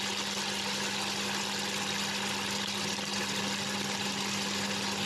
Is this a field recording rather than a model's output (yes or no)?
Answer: yes